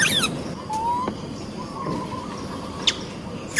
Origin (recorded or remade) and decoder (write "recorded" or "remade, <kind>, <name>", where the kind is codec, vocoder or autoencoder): recorded